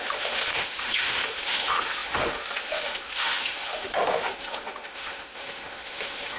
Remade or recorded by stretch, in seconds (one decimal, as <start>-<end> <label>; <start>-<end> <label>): 0.0-6.4 remade